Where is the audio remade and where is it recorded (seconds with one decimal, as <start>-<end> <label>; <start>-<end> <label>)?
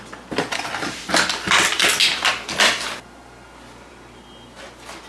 0.0-5.1 recorded